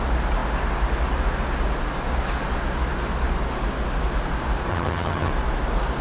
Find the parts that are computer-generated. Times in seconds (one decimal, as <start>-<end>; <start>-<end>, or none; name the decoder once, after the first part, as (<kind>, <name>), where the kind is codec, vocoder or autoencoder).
4.7-5.3 (vocoder, HiFi-GAN)